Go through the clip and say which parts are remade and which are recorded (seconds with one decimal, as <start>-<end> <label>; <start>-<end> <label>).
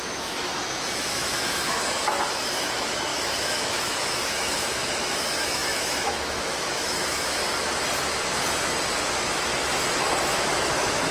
0.0-7.4 remade; 7.4-8.9 recorded; 8.9-9.5 remade; 9.5-10.2 recorded; 10.2-11.1 remade